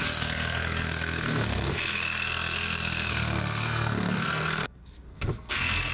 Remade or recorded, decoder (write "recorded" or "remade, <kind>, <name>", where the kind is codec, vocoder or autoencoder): remade, codec, SNAC